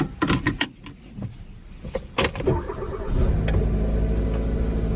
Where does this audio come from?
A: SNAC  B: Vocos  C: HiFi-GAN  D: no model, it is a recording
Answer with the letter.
D